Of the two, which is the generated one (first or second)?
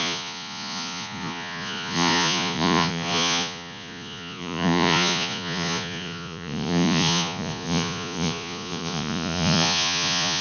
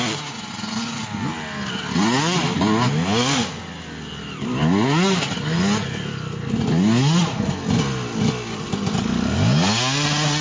first